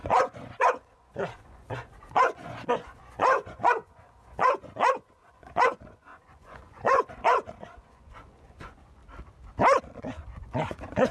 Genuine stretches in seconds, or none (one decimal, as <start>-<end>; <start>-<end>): 9.0-9.8

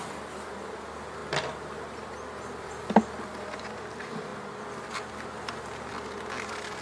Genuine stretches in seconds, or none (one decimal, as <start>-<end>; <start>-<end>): 0.0-6.8

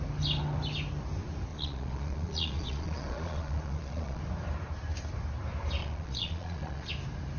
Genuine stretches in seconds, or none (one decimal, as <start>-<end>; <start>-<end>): 0.0-1.5; 4.2-5.8; 6.9-7.4

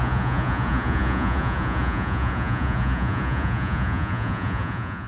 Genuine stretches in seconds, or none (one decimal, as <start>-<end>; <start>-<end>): none

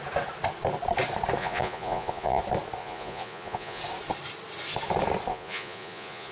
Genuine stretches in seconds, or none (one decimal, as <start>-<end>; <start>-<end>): 0.0-1.4; 2.4-2.8; 3.8-5.3